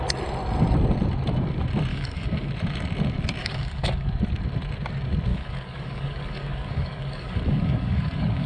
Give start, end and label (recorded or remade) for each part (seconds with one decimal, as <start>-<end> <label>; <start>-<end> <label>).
0.0-1.9 recorded; 1.9-2.5 remade; 2.5-3.4 recorded; 3.4-4.1 remade; 4.1-5.3 recorded; 5.3-8.5 remade